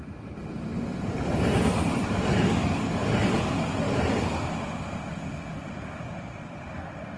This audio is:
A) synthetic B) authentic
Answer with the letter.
B